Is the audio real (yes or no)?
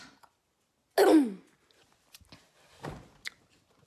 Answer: yes